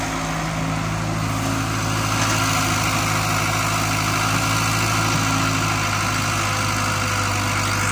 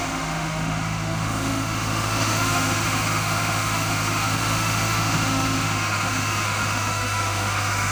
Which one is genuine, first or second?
first